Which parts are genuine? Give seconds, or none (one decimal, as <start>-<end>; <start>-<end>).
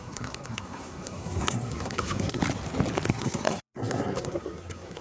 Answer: 2.4-3.1